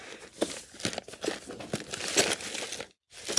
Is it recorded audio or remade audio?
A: recorded